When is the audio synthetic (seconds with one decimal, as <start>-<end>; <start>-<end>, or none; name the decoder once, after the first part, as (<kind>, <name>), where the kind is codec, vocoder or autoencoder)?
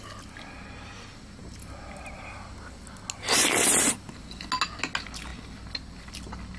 none